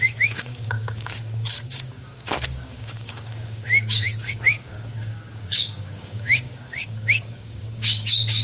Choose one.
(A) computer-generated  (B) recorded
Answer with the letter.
A